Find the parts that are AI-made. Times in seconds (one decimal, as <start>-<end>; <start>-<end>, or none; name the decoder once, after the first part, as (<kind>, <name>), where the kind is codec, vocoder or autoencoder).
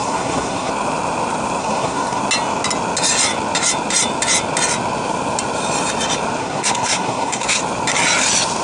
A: 0.0-0.7 (codec, SNAC); 1.6-2.2; 6.4-7.6